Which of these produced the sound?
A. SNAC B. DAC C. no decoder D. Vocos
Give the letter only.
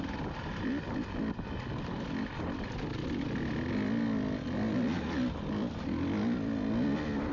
C